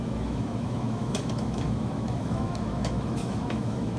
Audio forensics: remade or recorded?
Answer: remade